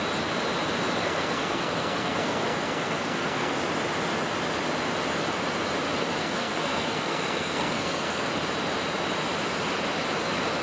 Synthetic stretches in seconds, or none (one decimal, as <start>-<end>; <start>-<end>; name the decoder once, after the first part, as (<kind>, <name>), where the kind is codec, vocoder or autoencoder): 1.0-3.6 (codec, SNAC); 6.2-8.3